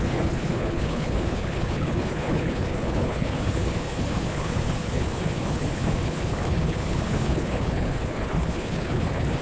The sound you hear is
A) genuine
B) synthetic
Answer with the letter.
B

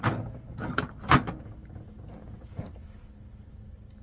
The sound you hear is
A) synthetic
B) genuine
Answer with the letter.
B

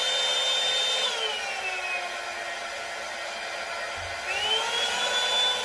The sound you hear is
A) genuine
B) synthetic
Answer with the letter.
A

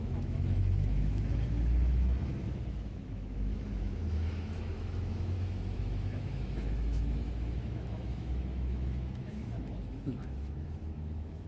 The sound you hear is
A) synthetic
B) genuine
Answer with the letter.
A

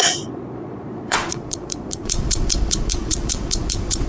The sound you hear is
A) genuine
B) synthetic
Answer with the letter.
B